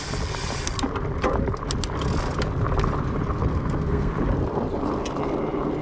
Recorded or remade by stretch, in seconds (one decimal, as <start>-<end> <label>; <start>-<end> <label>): 0.0-3.5 recorded; 3.5-4.1 remade; 4.1-5.8 recorded